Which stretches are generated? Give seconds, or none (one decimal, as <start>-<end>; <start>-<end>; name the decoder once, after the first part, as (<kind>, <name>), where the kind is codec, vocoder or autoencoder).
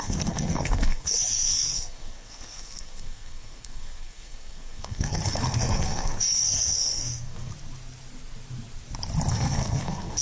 0.0-7.5 (codec, SNAC); 9.3-10.2